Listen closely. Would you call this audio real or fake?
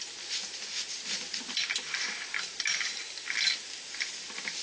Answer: real